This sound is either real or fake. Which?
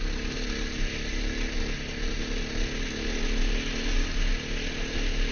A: real